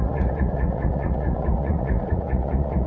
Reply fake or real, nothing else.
fake